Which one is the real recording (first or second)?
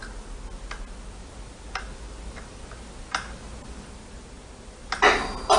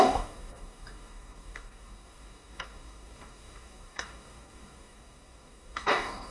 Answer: first